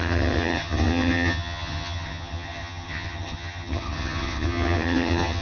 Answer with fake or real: fake